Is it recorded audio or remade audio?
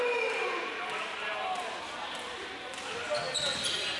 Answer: recorded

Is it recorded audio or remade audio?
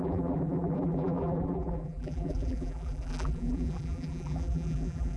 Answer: remade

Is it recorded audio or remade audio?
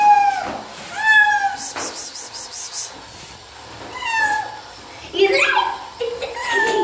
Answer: recorded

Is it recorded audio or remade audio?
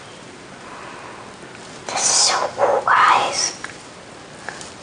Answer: recorded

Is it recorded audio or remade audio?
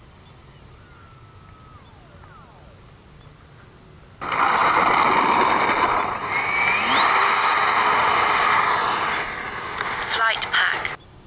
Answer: recorded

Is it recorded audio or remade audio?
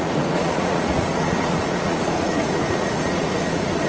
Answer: remade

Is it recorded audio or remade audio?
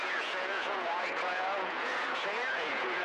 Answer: remade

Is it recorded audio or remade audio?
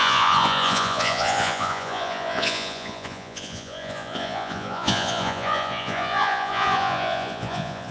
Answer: remade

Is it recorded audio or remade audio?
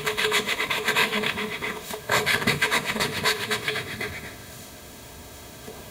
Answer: remade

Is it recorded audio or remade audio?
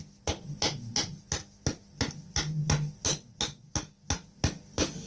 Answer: recorded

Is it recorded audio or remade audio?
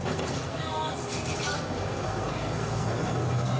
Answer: remade